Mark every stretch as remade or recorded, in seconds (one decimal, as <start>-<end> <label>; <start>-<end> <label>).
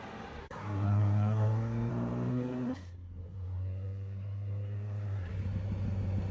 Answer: 0.0-0.4 recorded; 0.4-1.9 remade; 1.9-2.3 recorded; 2.3-5.3 remade; 5.3-6.3 recorded